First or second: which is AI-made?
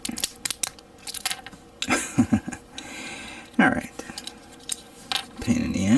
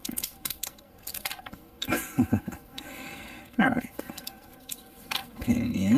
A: second